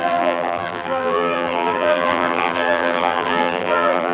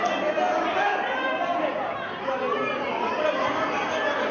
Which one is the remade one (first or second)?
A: first